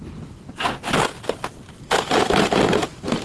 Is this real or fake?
real